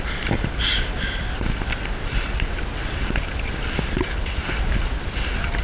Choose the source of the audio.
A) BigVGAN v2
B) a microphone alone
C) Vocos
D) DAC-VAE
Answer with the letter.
B